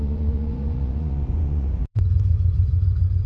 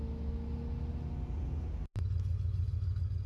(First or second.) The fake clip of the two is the first